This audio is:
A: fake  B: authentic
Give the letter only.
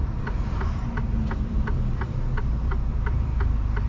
A